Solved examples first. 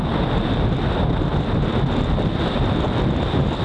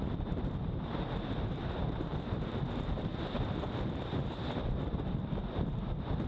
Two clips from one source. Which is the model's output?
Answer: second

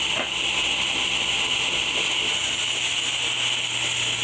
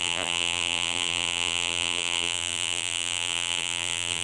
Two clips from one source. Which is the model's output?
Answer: second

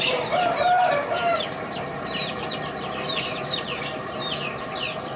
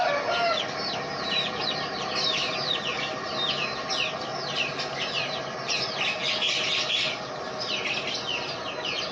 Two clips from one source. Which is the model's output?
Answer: first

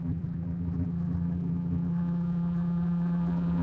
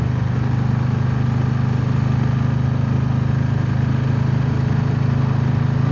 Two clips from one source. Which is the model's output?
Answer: first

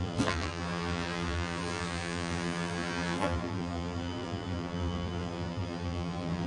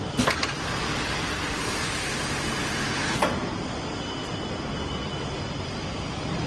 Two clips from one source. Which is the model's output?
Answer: first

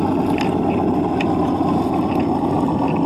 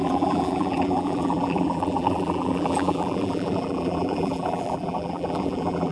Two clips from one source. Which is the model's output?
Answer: second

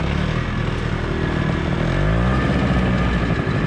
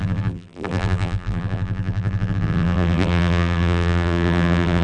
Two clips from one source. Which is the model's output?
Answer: second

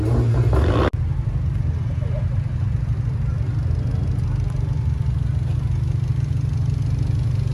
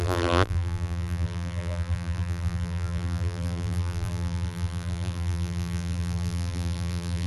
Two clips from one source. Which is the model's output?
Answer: second